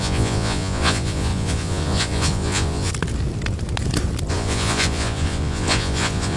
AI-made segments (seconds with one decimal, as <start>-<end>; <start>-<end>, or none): 0.0-2.9; 4.3-6.4